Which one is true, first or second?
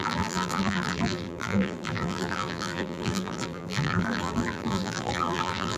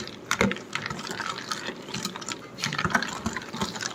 second